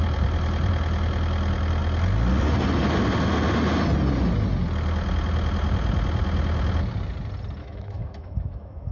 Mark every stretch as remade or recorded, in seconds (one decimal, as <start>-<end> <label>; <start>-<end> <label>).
0.0-7.6 recorded; 7.6-8.9 remade